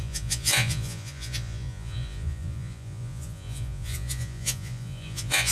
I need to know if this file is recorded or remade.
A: remade